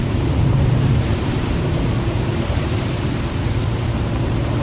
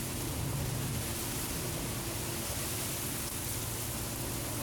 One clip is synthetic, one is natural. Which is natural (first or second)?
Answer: second